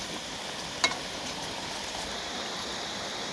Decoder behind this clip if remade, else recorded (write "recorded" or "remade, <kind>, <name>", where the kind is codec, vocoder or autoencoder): recorded